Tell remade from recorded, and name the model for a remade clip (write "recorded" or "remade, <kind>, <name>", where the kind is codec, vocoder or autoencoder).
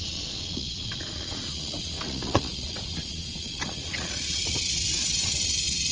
remade, vocoder, Vocos